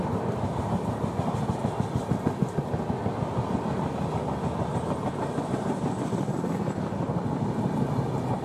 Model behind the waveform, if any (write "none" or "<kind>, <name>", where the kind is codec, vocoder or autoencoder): none